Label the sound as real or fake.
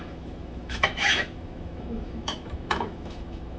fake